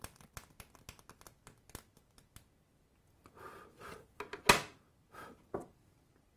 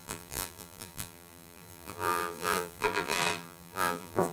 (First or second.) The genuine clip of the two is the first